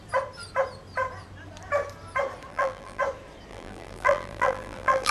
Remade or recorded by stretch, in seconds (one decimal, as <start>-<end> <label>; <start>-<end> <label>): 0.0-2.5 recorded; 2.5-3.0 remade; 3.0-3.5 recorded; 3.5-5.1 remade